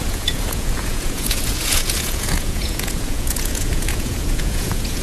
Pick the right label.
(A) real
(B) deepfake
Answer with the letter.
B